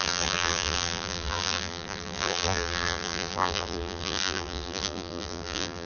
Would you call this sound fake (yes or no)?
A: yes